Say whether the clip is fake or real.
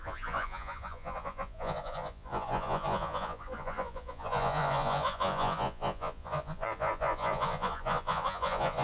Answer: fake